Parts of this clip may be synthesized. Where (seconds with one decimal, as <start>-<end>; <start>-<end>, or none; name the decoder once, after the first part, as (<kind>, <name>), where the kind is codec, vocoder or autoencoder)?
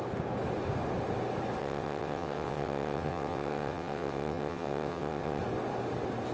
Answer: 1.6-5.4 (vocoder, WaveNeXt)